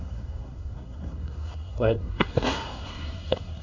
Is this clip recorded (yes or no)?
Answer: no